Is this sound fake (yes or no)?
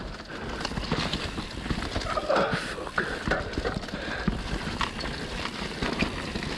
no